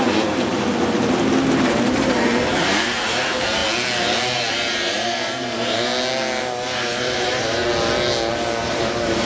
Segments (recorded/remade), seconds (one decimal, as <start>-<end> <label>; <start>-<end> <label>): 0.0-0.5 remade; 0.5-1.6 recorded; 1.6-3.6 remade; 3.6-4.5 recorded; 4.5-5.9 remade; 5.9-6.4 recorded; 6.4-7.6 remade; 7.6-8.3 recorded; 8.3-9.3 remade